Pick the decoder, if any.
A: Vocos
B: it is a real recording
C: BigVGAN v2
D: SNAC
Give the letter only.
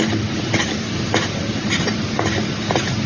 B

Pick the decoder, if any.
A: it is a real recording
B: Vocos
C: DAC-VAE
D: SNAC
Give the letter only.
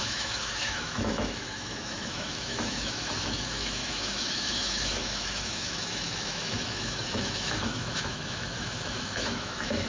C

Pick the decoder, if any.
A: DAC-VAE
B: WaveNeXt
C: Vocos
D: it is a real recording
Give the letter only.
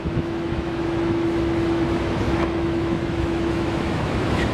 A